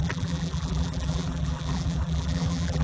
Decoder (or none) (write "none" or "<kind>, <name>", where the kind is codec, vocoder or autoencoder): vocoder, BigVGAN v2